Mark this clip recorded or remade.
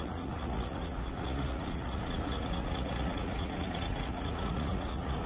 remade